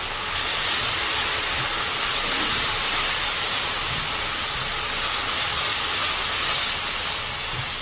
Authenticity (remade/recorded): recorded